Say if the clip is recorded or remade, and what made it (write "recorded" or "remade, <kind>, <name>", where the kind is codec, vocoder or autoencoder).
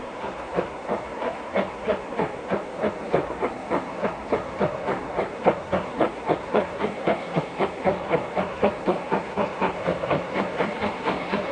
remade, codec, SNAC